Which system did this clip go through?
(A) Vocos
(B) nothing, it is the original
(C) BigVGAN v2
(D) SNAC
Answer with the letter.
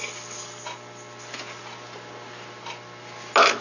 B